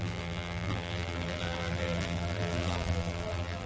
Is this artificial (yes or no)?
yes